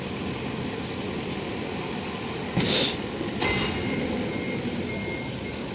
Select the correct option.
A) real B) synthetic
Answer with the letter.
A